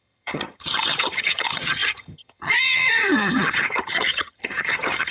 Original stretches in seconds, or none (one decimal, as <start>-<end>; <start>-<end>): none